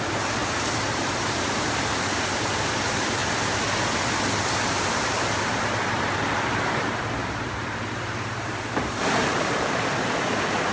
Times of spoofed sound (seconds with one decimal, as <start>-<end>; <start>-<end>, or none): 0.4-2.8; 7.2-9.9